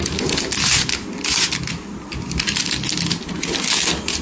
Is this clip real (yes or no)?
yes